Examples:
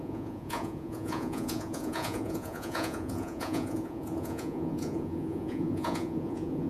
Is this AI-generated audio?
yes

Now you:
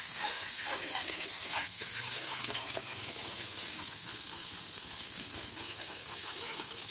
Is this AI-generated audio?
yes